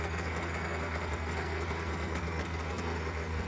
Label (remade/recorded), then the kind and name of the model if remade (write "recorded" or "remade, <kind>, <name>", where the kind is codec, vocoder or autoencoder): remade, codec, SNAC